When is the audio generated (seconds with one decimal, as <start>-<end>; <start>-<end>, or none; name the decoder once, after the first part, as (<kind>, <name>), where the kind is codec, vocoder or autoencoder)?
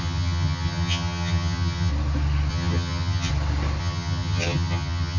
0.0-1.9 (vocoder, HiFi-GAN); 2.5-3.3; 3.8-5.2